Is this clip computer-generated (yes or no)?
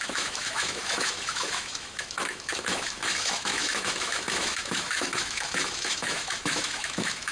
yes